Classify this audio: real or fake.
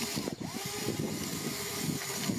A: real